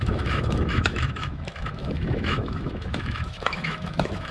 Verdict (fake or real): fake